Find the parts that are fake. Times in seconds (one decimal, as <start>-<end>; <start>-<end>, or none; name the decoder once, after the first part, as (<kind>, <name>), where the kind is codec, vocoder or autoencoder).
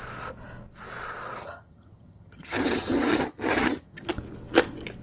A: 1.4-4.1 (vocoder, HiFi-GAN)